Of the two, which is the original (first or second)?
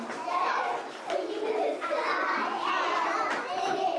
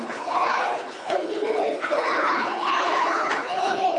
first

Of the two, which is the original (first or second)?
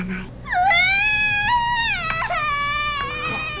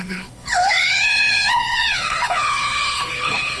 first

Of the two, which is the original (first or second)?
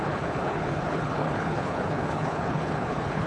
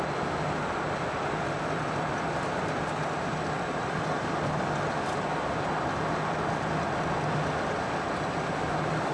second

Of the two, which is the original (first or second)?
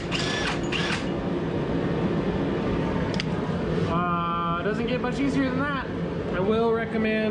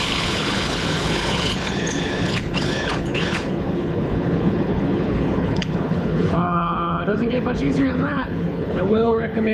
first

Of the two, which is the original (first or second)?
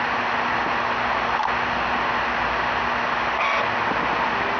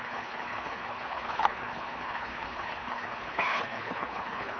first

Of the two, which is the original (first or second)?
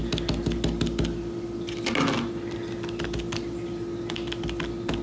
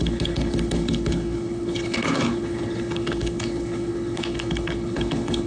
first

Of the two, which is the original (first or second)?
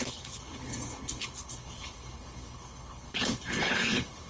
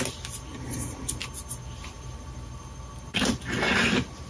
second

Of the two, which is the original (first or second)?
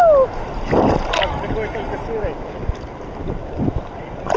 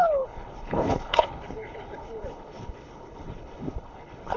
first